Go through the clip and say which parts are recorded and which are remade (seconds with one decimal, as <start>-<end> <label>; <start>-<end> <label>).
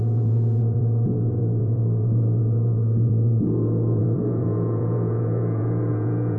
0.0-6.4 remade